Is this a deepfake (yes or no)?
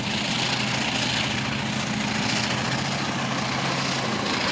no